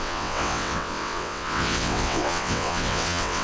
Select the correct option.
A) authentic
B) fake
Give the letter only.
B